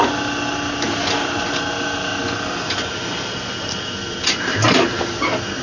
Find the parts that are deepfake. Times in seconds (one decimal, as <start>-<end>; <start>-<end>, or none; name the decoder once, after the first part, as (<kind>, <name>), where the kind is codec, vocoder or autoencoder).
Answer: none